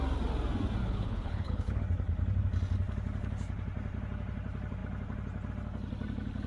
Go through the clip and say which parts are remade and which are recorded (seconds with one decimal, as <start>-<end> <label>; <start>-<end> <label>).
0.0-0.8 recorded; 0.8-1.8 remade; 1.8-6.5 recorded